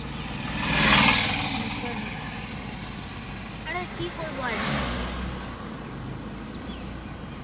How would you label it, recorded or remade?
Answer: recorded